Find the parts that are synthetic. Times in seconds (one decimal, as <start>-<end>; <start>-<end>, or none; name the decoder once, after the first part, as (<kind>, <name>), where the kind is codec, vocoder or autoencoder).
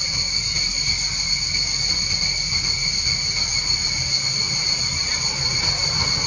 none